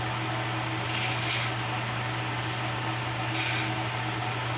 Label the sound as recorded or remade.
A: recorded